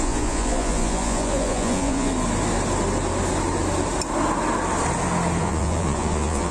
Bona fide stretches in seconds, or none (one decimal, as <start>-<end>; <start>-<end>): 2.1-5.4